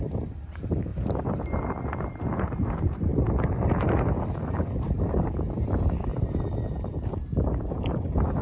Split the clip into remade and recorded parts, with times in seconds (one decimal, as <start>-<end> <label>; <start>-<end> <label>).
0.0-3.1 remade; 3.1-4.4 recorded; 4.4-6.1 remade; 6.1-7.4 recorded; 7.4-8.4 remade